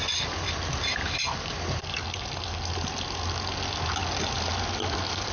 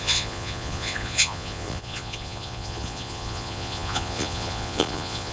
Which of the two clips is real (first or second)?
first